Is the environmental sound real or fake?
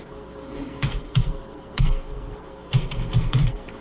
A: fake